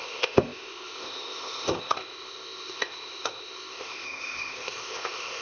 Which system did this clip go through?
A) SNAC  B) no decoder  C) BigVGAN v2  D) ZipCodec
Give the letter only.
D